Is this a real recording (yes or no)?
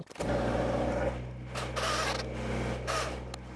yes